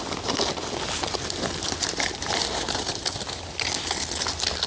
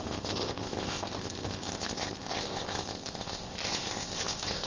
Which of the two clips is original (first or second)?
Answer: first